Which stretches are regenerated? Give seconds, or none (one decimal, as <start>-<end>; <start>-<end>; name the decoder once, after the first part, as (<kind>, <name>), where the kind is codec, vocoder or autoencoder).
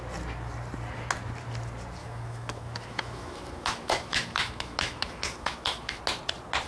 2.0-6.0 (autoencoder, DAC-VAE)